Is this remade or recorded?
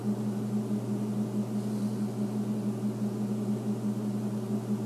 recorded